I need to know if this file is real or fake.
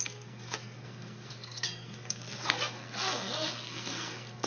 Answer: fake